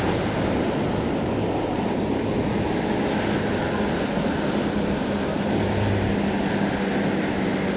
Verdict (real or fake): real